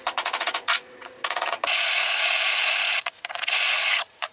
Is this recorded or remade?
remade